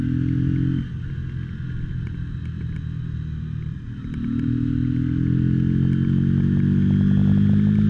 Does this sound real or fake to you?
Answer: real